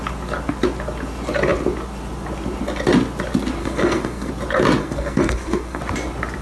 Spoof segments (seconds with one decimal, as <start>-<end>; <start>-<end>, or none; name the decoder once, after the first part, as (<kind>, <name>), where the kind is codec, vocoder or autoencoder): 3.6-4.3 (codec, SNAC); 4.8-5.8